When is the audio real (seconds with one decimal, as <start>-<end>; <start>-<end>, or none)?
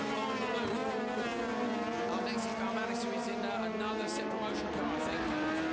0.0-5.7